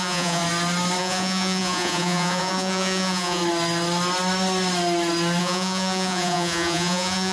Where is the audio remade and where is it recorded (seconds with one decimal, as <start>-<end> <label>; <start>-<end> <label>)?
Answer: 0.0-0.4 remade; 0.4-1.0 recorded; 1.0-3.4 remade; 3.4-5.4 recorded; 5.4-7.3 remade